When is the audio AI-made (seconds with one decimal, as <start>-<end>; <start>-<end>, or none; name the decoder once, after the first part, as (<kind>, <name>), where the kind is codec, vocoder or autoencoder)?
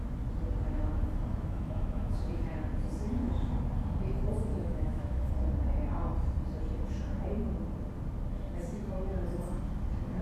1.3-2.4 (autoencoder, DAC-VAE); 4.5-5.3